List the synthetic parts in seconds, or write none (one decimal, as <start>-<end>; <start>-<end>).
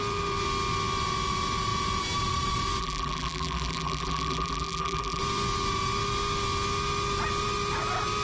2.8-5.2